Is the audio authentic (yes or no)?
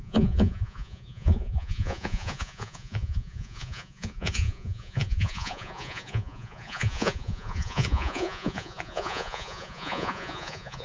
no